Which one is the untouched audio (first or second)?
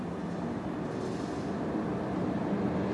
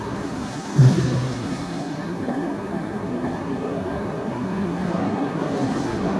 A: first